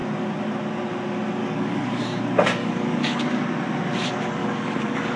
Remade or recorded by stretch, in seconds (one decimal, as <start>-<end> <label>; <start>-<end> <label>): 0.0-1.4 recorded; 1.4-2.0 remade; 2.0-2.6 recorded; 2.6-3.2 remade; 3.2-4.4 recorded; 4.4-5.2 remade